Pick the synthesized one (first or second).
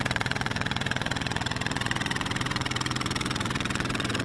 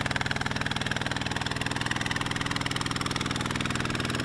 first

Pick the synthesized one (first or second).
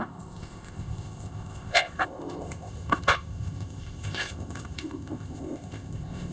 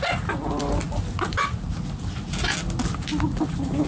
first